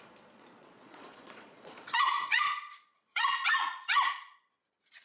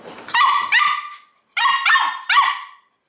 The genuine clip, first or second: second